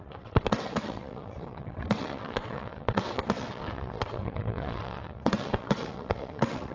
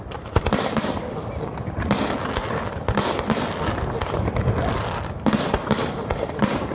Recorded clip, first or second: second